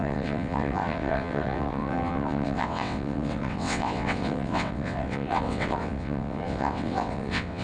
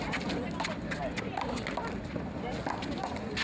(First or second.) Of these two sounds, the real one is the second